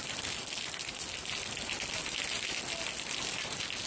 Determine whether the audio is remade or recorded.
recorded